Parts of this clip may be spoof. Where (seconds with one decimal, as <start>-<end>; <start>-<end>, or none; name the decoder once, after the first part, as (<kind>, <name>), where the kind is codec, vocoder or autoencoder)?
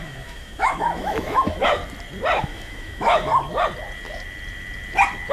0.0-1.8 (autoencoder, DAC-VAE); 2.4-3.3